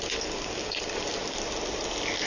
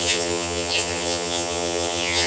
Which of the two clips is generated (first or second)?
second